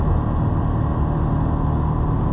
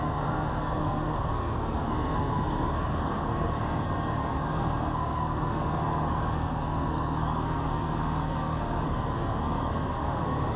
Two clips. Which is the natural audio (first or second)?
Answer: first